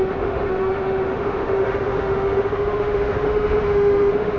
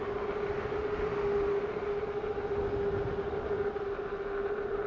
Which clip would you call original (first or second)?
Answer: second